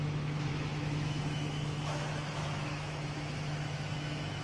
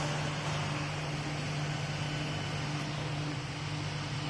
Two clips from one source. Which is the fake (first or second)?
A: first